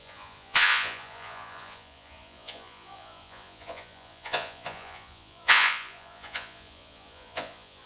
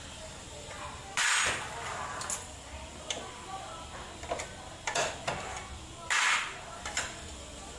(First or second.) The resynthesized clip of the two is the first